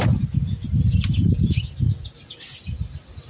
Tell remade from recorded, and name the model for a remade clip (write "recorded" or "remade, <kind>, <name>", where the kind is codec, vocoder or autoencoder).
recorded